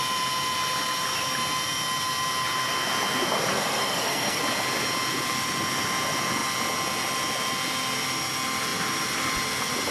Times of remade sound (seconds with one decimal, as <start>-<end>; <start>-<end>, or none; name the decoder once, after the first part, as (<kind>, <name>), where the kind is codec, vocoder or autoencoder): 3.5-4.4 (codec, SNAC)